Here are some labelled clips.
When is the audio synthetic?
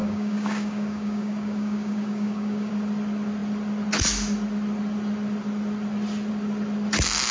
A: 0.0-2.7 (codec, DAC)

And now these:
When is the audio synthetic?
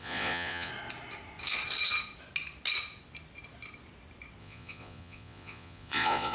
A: 0.0-0.7 (vocoder, Vocos); 4.4-6.3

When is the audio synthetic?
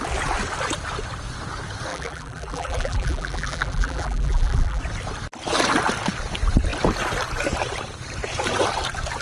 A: 1.9-4.8 (vocoder, BigVGAN v2)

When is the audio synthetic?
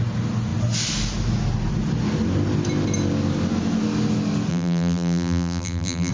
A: 4.5-6.1 (vocoder, BigVGAN v2)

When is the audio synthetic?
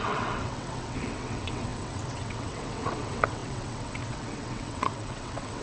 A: 0.0-5.6 (vocoder, WaveNeXt)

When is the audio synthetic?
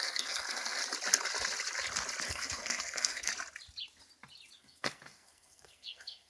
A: 0.0-0.8 (codec, SNAC); 2.3-3.3; 4.6-6.3